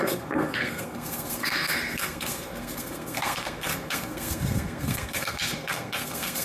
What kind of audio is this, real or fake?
fake